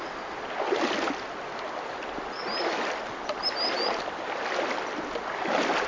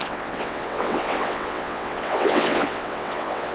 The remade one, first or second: second